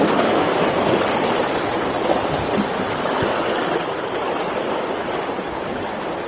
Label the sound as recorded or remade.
recorded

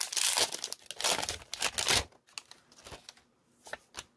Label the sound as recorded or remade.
recorded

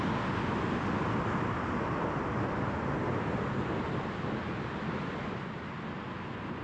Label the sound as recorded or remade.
recorded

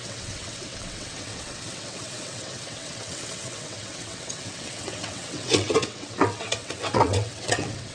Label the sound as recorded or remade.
remade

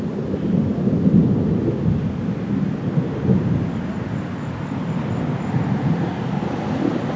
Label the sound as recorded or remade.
recorded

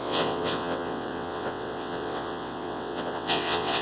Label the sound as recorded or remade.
remade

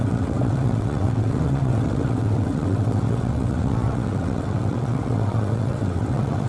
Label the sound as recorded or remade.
remade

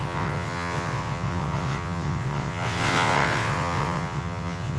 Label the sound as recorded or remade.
remade